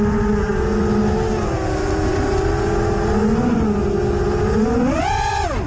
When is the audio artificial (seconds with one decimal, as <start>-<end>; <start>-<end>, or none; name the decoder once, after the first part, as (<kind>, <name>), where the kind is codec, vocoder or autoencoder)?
none

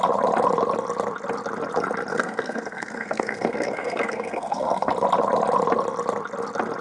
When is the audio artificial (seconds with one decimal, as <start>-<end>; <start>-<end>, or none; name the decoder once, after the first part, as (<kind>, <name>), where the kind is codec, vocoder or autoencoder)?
2.1-4.9 (codec, SNAC)

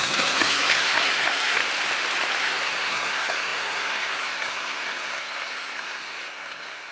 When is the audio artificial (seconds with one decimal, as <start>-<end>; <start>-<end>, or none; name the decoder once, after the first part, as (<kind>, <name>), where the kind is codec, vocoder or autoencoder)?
0.0-1.6 (codec, SNAC); 2.4-6.9

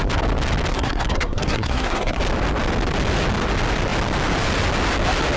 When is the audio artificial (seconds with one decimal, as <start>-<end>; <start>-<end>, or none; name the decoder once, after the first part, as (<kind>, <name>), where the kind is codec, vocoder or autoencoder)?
0.7-2.2 (codec, SNAC)